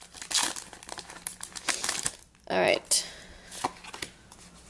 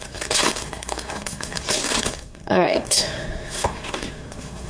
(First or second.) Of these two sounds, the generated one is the second